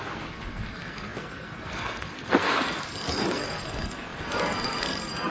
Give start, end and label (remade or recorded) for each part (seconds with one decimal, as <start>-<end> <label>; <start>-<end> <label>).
0.0-5.3 remade